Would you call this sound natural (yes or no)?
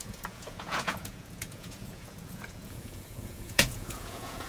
no